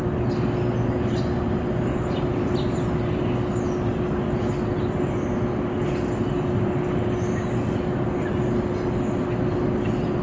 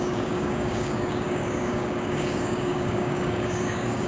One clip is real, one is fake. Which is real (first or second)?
first